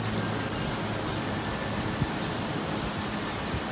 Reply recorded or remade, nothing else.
recorded